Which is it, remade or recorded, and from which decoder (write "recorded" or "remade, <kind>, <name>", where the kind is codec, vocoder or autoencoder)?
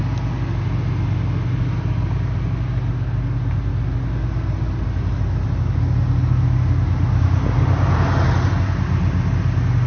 recorded